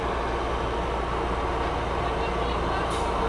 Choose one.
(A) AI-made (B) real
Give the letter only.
B